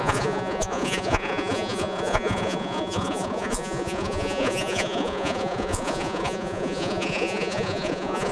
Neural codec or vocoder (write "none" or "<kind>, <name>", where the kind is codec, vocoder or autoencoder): vocoder, Vocos